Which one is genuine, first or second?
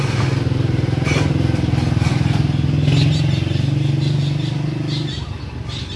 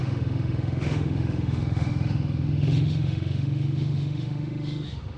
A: first